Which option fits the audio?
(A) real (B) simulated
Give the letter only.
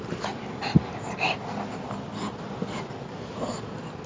A